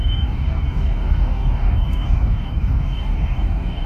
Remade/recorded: remade